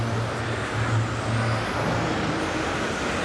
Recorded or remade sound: recorded